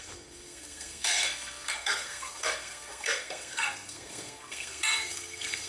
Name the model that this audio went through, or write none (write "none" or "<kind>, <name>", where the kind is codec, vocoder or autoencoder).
codec, SNAC